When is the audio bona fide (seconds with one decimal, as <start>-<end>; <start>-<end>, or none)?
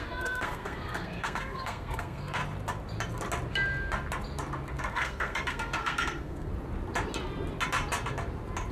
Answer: 2.4-4.9; 6.5-8.7